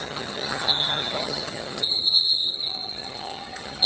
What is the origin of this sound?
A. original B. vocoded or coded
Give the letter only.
B